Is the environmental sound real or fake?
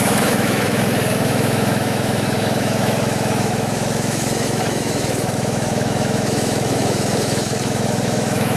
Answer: fake